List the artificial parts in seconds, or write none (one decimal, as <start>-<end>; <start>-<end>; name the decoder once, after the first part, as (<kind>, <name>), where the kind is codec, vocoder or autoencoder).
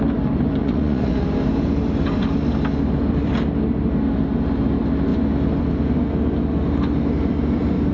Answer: 0.6-1.2 (vocoder, Vocos)